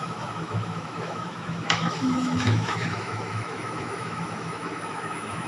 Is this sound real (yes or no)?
no